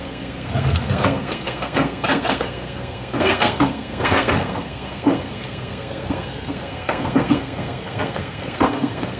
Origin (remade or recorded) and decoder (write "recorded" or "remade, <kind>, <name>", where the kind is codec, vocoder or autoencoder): remade, codec, SNAC